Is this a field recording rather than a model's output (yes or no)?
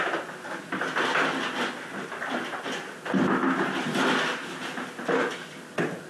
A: yes